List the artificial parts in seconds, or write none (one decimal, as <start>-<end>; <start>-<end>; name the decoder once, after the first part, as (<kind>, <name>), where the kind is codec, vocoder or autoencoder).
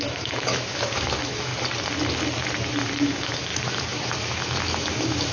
0.0-1.5 (autoencoder, DAC-VAE); 2.9-5.3